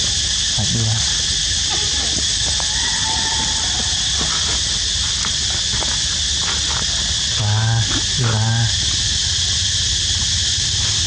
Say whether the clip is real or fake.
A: real